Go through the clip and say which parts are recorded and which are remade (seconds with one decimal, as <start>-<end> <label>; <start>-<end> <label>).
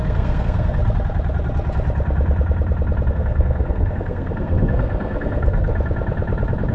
0.0-0.8 remade; 0.8-3.1 recorded; 3.1-5.7 remade; 5.7-6.7 recorded